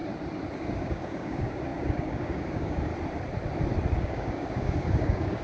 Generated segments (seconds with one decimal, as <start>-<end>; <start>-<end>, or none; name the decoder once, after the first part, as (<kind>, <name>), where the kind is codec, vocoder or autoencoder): 0.5-2.9 (codec, DAC); 3.9-5.4